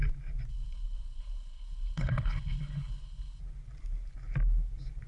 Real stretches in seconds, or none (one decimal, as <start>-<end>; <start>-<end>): 0.0-0.5; 3.4-5.1